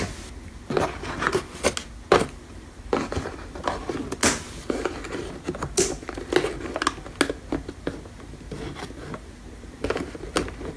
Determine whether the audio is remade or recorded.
recorded